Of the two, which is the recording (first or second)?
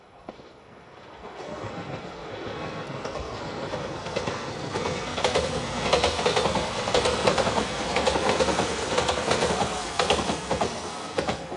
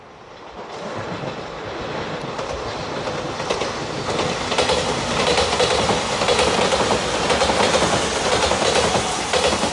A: second